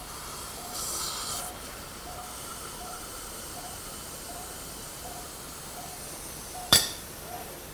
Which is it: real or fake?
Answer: fake